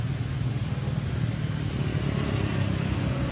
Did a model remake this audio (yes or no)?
no